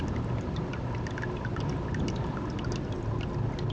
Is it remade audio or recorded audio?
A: recorded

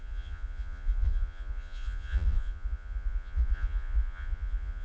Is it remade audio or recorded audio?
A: remade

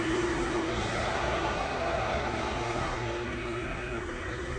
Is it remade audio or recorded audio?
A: remade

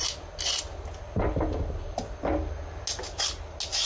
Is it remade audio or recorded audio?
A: recorded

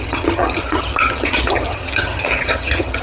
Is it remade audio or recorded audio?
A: remade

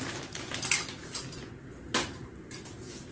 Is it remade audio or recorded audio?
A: recorded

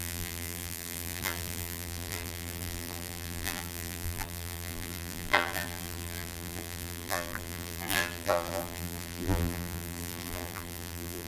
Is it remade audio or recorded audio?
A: remade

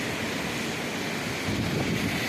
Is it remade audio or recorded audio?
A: recorded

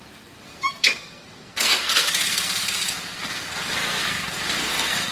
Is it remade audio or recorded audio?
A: remade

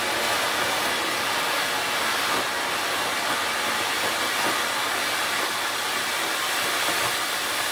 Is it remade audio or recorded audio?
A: recorded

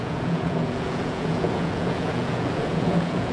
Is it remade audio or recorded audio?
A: remade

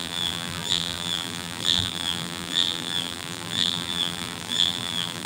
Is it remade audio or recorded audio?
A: remade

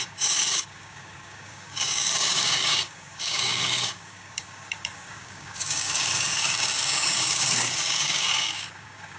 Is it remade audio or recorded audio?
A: remade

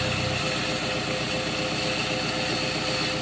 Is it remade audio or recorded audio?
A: recorded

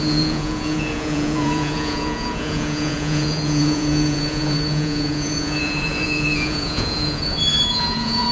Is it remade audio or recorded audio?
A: remade